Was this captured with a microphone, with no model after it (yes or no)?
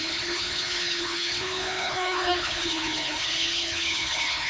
no